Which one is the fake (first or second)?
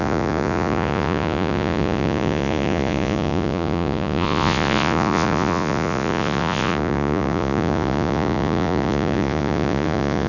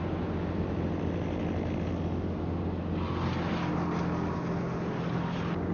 first